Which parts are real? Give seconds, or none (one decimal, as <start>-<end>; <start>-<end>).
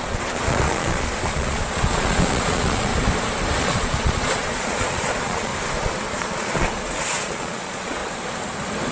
2.9-3.6; 5.5-6.1; 8.0-8.9